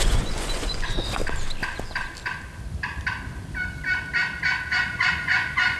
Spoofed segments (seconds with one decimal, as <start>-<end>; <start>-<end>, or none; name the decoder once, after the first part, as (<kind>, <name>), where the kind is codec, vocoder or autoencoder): 0.0-1.2 (vocoder, Vocos); 4.7-5.8